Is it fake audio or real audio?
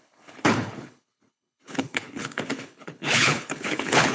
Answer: fake